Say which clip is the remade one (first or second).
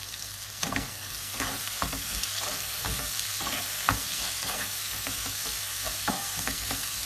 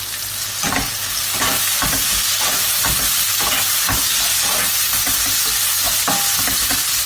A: first